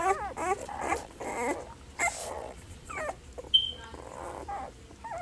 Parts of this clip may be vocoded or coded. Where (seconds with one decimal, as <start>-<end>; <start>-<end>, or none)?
0.6-1.2; 2.2-3.0